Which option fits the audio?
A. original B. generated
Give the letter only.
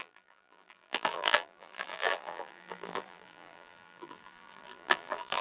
B